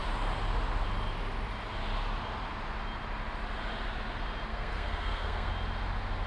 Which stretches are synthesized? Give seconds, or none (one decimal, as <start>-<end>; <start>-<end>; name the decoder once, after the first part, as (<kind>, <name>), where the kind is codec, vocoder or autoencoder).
4.5-5.5 (codec, SNAC)